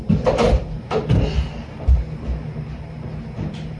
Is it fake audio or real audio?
real